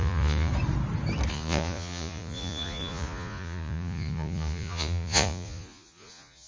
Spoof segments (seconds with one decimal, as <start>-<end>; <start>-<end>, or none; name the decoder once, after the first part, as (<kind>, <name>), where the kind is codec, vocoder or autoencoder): 0.0-0.5 (vocoder, Vocos); 1.3-6.5